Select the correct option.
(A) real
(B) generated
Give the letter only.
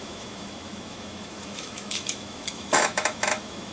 B